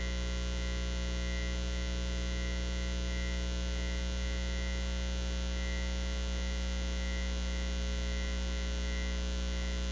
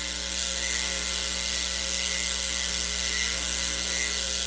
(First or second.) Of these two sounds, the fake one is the second